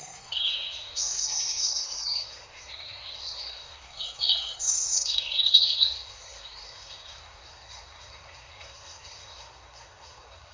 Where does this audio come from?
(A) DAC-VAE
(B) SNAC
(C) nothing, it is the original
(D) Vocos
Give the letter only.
B